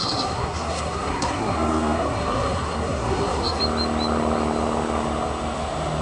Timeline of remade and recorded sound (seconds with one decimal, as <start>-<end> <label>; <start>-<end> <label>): 0.0-3.6 remade; 3.6-6.0 recorded